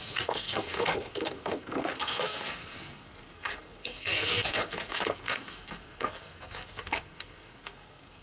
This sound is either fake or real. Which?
fake